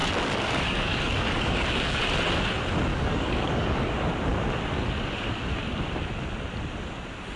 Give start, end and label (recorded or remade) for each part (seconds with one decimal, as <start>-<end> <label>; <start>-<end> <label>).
0.0-2.0 remade; 2.0-2.9 recorded; 2.9-3.9 remade; 3.9-7.4 recorded